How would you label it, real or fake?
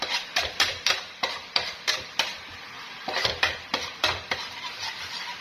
fake